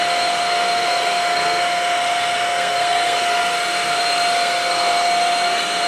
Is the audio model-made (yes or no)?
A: yes